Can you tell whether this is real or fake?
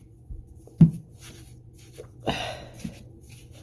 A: fake